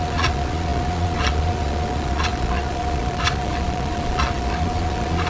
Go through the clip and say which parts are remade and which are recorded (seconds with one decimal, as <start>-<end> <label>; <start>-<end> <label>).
0.0-5.3 remade